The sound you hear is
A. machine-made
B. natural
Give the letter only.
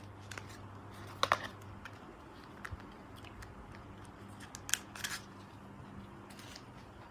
B